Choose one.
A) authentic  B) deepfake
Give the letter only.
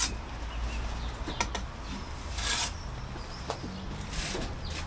A